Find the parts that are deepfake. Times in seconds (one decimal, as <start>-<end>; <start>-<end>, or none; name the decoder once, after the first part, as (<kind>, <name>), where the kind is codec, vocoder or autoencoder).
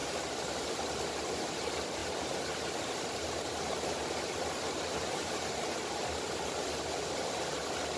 0.7-2.0 (vocoder, BigVGAN v2); 5.1-8.0